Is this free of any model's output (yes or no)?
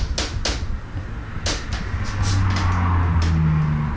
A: yes